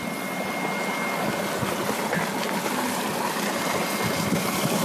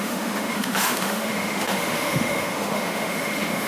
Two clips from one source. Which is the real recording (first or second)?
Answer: first